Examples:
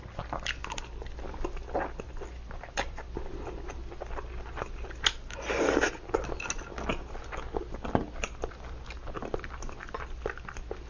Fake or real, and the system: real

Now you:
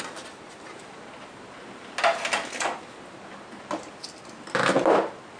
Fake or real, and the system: real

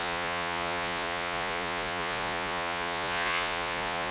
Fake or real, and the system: fake, vocoder, Vocos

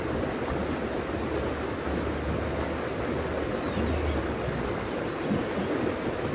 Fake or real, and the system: real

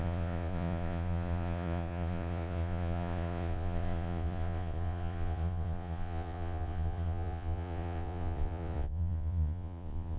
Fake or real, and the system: fake, vocoder, Vocos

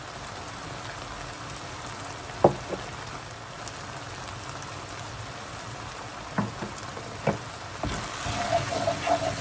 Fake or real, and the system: real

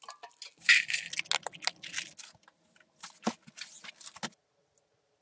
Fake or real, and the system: real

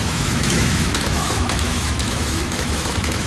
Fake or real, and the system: fake, autoencoder, DAC-VAE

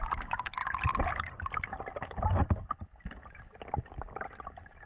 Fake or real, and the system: real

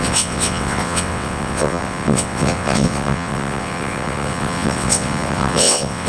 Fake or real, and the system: fake, vocoder, WaveNeXt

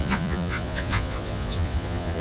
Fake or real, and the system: fake, vocoder, Vocos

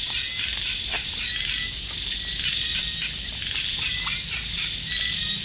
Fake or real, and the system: real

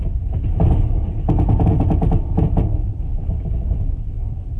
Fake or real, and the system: real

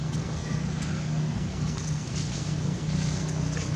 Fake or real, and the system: fake, codec, SNAC